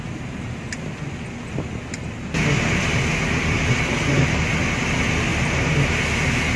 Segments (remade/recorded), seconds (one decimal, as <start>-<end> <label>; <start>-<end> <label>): 0.0-6.6 recorded